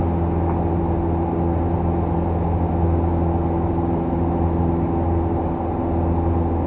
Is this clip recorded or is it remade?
recorded